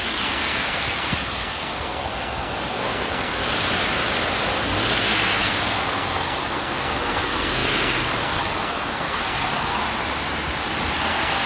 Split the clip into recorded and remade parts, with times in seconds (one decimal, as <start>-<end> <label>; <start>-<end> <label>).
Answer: 0.0-3.4 remade; 3.4-5.0 recorded; 5.0-9.8 remade; 9.8-11.0 recorded; 11.0-11.5 remade